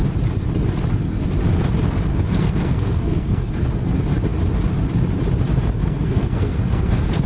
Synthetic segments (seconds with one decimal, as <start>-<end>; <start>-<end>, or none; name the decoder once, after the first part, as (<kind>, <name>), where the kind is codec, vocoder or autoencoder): 2.1-3.5 (codec, SNAC); 5.8-7.3